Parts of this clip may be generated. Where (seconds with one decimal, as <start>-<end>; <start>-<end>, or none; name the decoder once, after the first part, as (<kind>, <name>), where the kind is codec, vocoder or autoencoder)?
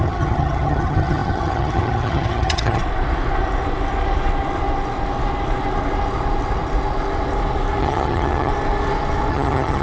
0.0-2.8 (vocoder, HiFi-GAN); 7.8-8.5; 9.3-9.8